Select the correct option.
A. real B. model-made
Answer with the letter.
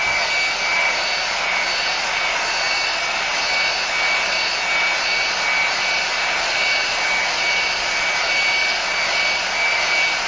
A